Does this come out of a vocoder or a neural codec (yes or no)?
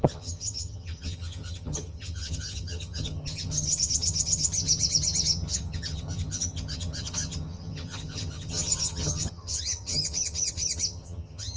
yes